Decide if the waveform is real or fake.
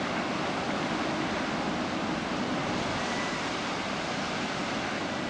real